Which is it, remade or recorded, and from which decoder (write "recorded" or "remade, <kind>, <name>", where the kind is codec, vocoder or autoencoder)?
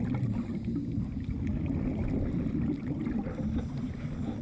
recorded